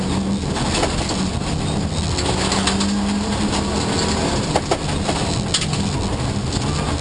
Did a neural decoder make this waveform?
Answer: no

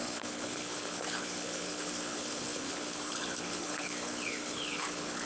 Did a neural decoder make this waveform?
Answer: yes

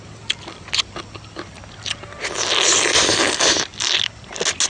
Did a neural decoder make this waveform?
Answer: no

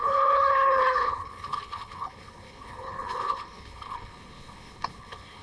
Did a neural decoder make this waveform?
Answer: yes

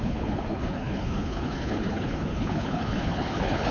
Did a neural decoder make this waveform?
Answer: yes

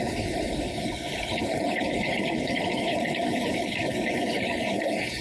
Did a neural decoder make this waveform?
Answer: yes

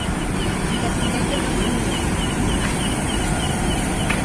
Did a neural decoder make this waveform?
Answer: no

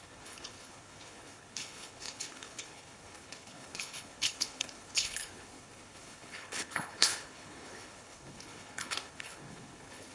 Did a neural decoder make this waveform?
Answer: yes